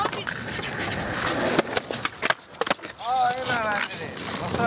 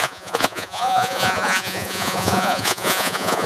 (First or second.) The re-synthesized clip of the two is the second